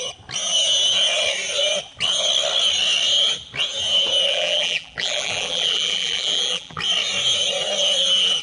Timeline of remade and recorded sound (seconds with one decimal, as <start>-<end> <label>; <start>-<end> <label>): 0.0-4.3 recorded; 4.3-6.8 remade; 6.8-8.4 recorded